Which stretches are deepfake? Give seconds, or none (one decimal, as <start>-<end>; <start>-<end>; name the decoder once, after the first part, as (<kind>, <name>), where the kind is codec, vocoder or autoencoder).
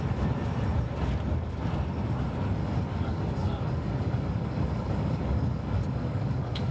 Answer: 2.6-6.7 (codec, DAC)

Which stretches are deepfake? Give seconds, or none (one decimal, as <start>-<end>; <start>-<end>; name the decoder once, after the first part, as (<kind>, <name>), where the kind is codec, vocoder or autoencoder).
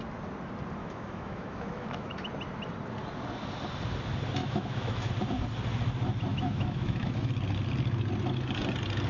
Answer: 0.8-2.3 (autoencoder, DAC-VAE); 4.4-5.1; 6.3-7.3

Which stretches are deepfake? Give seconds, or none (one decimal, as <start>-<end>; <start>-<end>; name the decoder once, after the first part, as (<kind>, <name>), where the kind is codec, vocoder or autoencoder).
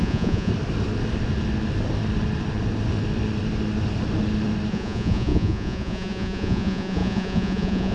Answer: 0.0-0.5 (vocoder, Vocos); 4.7-7.9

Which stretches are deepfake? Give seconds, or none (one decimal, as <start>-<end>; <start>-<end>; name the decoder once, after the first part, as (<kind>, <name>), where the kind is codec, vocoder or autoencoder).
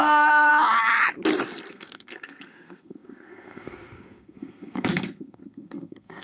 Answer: 0.0-0.5 (codec, SNAC); 1.7-6.2